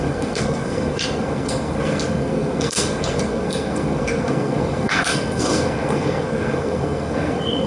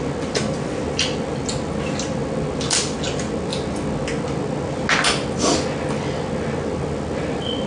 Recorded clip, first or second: second